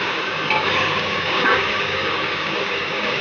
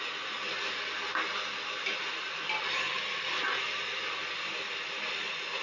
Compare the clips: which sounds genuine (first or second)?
second